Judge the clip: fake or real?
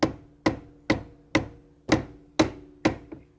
real